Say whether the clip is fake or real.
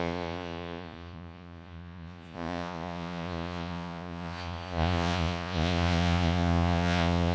fake